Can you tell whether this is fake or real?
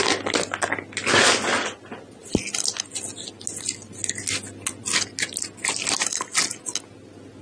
real